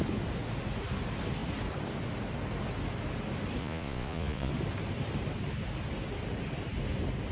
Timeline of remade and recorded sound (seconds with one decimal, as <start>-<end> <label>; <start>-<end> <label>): 0.0-3.6 recorded; 3.6-4.5 remade; 4.5-7.3 recorded